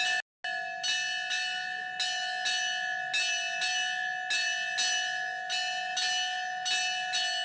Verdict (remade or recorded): recorded